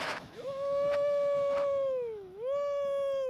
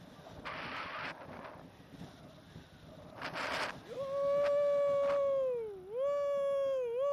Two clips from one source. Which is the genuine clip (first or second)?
second